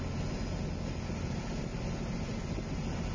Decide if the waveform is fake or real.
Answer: real